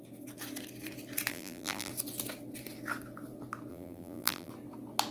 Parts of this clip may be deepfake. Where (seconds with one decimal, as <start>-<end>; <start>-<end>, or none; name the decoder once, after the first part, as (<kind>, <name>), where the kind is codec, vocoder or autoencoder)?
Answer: 1.3-1.9 (vocoder, BigVGAN v2); 3.7-4.5